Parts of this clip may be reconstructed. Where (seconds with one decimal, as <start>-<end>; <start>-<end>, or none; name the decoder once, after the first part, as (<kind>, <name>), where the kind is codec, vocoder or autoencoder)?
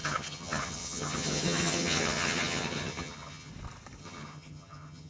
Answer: 0.0-3.5 (vocoder, HiFi-GAN); 4.0-5.1